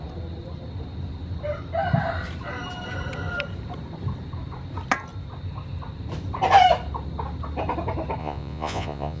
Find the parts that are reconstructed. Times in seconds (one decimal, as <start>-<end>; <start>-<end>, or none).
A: 8.2-9.2